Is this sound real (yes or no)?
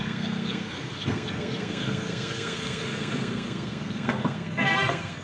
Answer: no